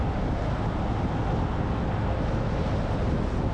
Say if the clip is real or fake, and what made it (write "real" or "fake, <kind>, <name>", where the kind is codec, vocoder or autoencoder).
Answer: real